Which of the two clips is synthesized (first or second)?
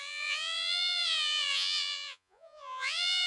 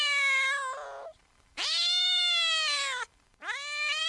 first